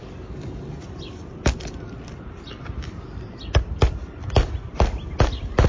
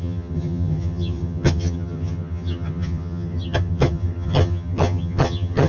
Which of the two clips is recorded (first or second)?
first